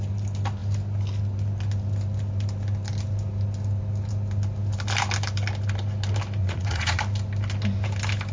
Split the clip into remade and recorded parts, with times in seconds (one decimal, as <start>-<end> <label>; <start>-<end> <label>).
0.0-6.4 recorded; 6.4-7.0 remade; 7.0-8.3 recorded